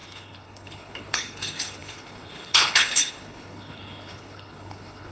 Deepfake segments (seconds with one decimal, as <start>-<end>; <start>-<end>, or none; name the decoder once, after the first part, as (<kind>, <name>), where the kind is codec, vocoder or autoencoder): 0.0-5.1 (codec, HILCodec)